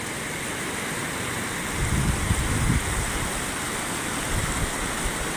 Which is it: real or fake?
real